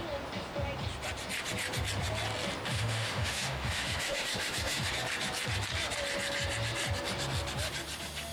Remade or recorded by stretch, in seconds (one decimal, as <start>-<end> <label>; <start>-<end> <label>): 0.0-2.7 recorded; 2.7-4.9 remade; 4.9-8.3 recorded